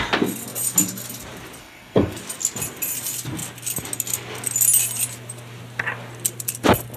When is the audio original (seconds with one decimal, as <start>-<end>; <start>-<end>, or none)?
0.0-1.6; 2.2-7.0